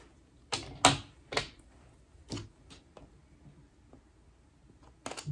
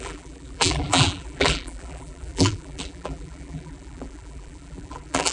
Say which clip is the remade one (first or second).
second